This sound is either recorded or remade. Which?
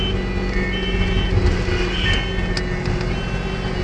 recorded